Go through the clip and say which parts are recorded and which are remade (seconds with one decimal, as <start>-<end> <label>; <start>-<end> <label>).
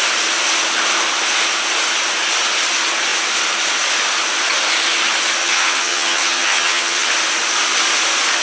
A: 0.0-5.4 recorded; 5.4-7.1 remade; 7.1-8.4 recorded